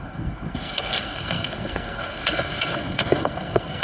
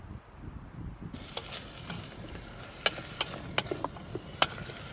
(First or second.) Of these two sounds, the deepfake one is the first